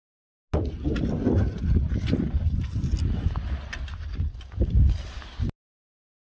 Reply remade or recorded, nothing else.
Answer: recorded